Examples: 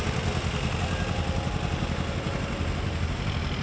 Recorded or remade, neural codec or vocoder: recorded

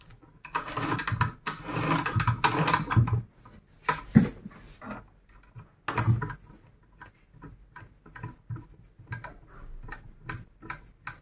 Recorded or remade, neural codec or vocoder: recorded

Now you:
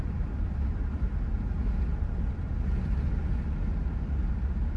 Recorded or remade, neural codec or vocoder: recorded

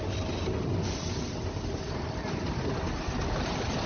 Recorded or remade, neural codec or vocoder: recorded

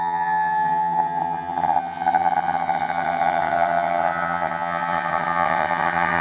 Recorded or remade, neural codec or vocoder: remade, vocoder, HiFi-GAN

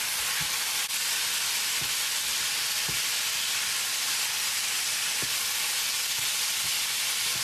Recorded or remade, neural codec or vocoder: recorded